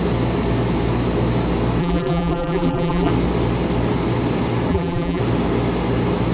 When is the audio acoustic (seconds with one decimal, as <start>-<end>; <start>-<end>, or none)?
0.0-1.8; 3.1-4.7; 5.2-6.3